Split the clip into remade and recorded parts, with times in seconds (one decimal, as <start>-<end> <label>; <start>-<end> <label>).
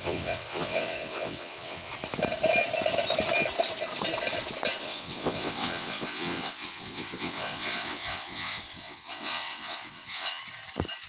0.0-1.9 remade; 1.9-4.8 recorded; 4.8-10.4 remade; 10.4-11.1 recorded